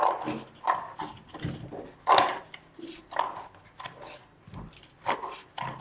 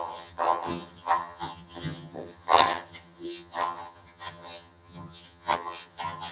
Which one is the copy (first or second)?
second